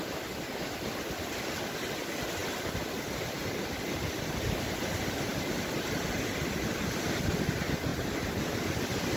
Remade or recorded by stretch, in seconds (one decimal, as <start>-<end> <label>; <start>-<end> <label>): 0.0-7.9 recorded; 7.9-8.4 remade; 8.4-9.2 recorded